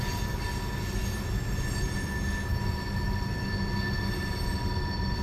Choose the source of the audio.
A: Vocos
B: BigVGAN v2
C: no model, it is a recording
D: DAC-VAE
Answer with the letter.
C